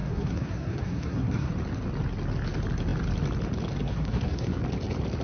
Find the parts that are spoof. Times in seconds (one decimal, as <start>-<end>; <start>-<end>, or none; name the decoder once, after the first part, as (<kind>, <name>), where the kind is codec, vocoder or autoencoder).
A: 0.0-1.5 (codec, SNAC); 3.9-4.6